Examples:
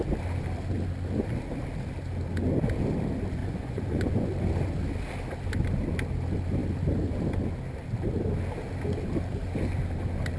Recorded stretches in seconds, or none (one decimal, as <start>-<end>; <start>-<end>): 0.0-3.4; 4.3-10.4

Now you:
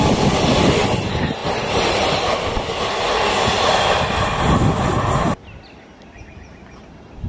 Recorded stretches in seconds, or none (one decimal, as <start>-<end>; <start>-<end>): 0.0-7.3

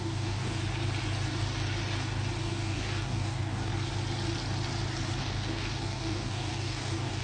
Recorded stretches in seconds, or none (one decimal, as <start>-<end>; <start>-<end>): 0.6-2.4; 3.7-5.2

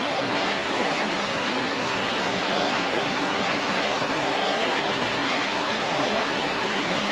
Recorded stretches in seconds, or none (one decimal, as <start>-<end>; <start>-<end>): none